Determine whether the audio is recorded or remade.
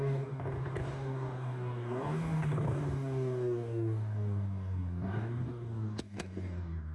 remade